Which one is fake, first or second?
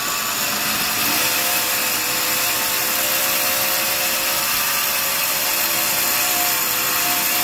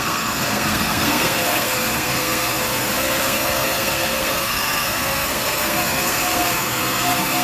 second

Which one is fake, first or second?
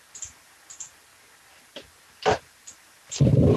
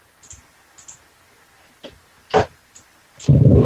first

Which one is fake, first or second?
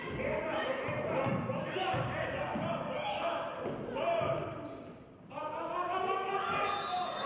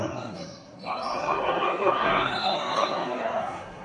second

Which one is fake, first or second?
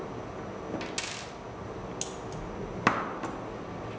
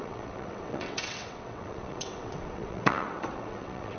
second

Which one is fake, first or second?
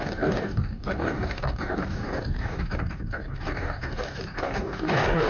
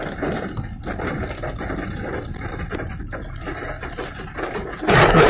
first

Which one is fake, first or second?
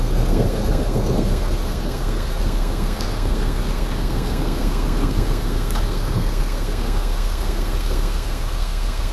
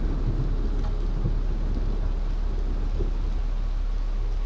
first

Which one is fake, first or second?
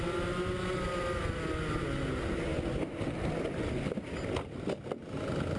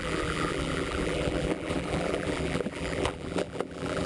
second